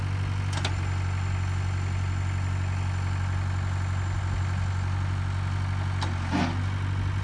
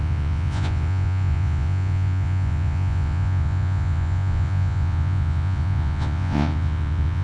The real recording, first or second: first